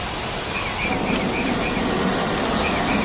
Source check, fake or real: real